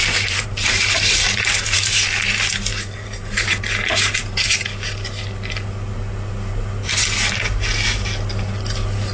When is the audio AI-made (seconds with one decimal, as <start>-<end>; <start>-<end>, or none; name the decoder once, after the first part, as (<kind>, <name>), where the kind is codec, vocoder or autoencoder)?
0.0-2.1 (vocoder, BigVGAN v2); 2.7-3.6